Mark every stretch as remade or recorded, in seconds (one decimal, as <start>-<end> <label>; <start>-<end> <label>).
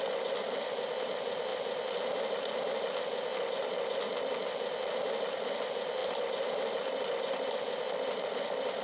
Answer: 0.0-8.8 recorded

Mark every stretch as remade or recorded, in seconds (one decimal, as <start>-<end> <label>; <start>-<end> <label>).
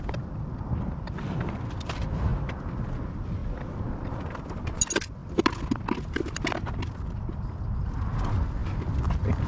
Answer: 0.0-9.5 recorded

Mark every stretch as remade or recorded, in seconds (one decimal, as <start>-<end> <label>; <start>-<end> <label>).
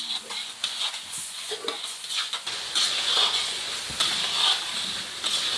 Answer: 0.0-0.4 recorded; 0.4-3.8 remade; 3.8-5.6 recorded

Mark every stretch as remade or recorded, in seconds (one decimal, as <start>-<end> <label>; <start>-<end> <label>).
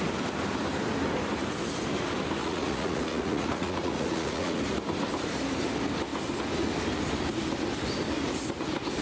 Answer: 0.0-2.4 recorded; 2.4-4.6 remade; 4.6-9.0 recorded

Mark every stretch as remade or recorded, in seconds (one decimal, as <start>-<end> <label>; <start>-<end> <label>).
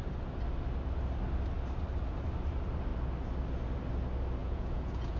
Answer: 0.0-4.4 recorded; 4.4-5.2 remade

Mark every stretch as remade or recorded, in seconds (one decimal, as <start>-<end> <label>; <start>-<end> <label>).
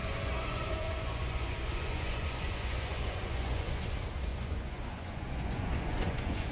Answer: 0.0-3.9 remade; 3.9-4.3 recorded; 4.3-6.5 remade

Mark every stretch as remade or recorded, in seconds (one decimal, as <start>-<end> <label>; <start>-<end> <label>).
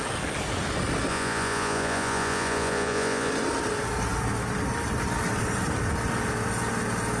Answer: 0.0-1.1 recorded; 1.1-3.3 remade; 3.3-7.2 recorded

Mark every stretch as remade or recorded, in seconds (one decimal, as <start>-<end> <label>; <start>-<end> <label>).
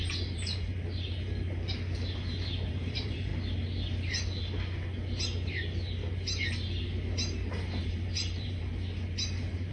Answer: 0.0-0.7 remade; 0.7-2.7 recorded; 2.7-3.3 remade; 3.3-7.8 recorded; 7.8-8.7 remade; 8.7-9.7 recorded